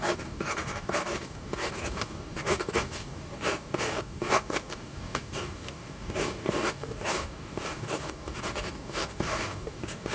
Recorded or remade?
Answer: remade